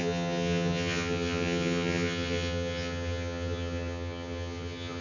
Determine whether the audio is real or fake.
fake